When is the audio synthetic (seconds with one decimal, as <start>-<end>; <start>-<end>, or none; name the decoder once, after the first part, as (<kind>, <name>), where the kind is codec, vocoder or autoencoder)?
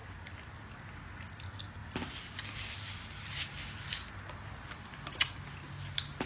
none